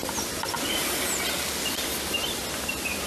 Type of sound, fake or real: real